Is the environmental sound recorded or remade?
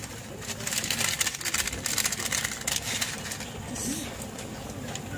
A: recorded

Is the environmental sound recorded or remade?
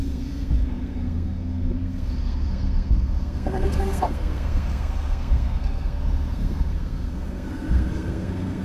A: remade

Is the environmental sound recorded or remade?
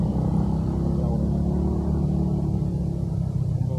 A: recorded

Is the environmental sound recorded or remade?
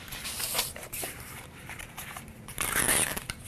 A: remade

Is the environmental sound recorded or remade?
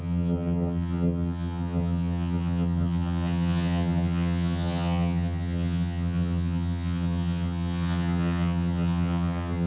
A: remade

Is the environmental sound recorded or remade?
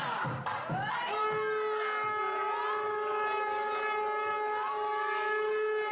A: recorded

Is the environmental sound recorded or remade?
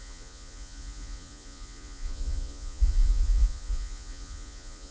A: remade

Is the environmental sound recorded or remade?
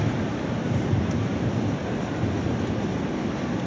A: recorded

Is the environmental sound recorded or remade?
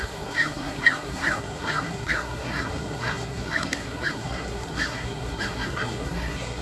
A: remade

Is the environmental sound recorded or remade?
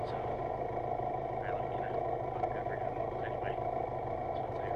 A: recorded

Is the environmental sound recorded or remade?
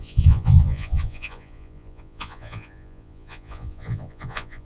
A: remade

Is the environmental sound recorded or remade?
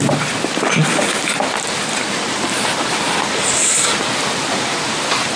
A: recorded